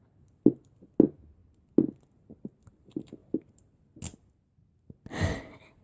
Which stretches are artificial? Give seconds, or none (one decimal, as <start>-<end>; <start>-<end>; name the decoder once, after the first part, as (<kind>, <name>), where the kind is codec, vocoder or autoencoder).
none